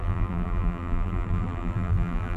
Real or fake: fake